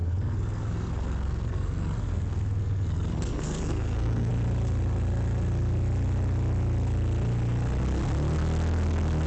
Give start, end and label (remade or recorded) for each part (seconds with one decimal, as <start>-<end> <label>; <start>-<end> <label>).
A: 0.0-4.3 remade; 4.3-9.3 recorded